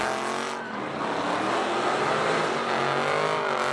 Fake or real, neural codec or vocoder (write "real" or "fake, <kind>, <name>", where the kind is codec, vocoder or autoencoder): real